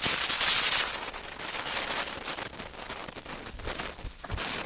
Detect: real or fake real